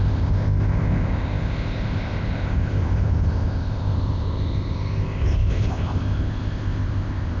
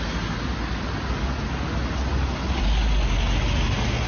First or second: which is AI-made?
first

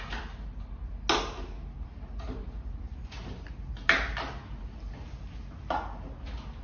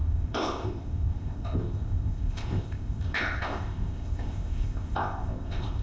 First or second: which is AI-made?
second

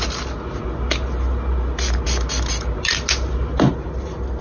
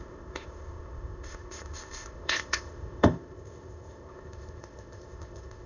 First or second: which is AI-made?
second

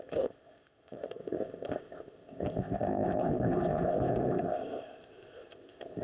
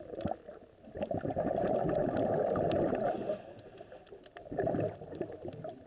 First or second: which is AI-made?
first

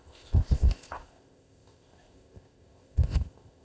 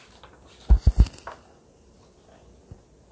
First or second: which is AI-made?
first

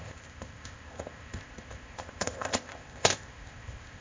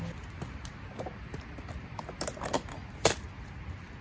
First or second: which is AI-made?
first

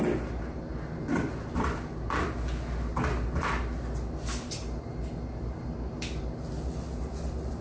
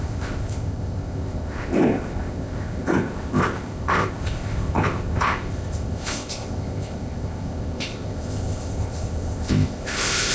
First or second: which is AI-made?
second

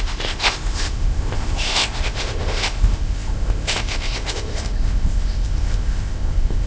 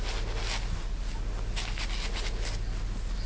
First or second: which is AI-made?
first